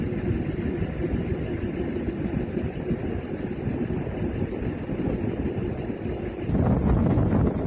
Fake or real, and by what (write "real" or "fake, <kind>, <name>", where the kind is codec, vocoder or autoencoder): real